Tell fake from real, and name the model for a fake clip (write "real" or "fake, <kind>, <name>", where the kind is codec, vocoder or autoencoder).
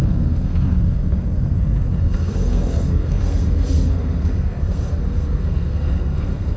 fake, codec, SNAC